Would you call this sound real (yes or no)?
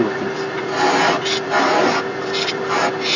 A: yes